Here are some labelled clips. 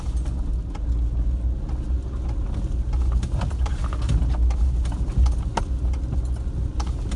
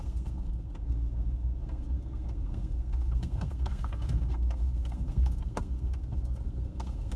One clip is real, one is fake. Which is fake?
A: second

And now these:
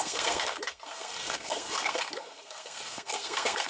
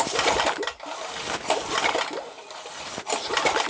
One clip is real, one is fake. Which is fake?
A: first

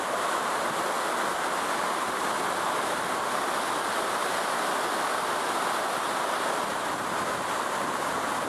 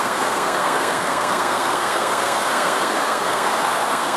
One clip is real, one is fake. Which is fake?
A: second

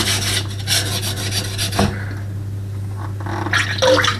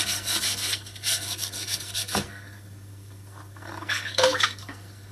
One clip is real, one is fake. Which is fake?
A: second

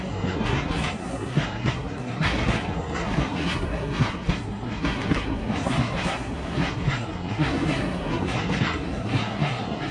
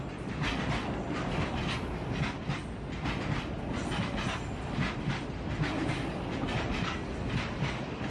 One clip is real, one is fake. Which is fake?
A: first